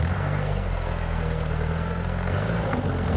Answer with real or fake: fake